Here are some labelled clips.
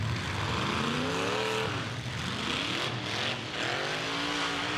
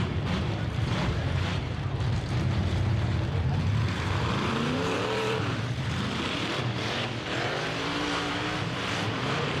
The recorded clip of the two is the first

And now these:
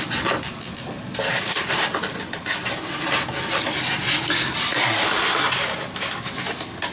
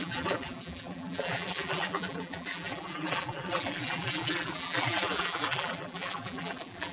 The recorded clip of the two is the first